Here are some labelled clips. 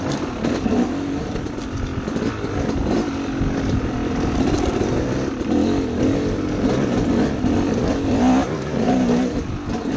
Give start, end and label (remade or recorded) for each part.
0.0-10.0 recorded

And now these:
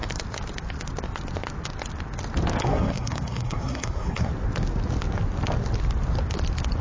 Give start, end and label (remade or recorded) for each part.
0.0-2.6 recorded; 2.6-4.3 remade; 4.3-6.8 recorded

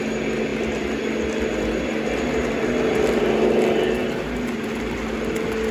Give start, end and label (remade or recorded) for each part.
0.0-5.7 recorded